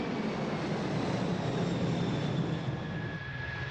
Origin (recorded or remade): recorded